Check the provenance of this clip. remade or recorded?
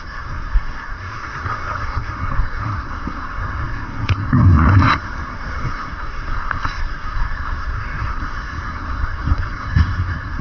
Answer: remade